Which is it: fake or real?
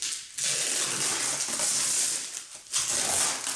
real